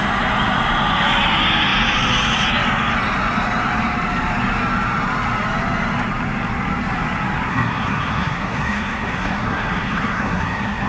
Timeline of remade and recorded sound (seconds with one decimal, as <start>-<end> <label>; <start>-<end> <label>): 0.0-7.5 recorded; 7.5-10.9 remade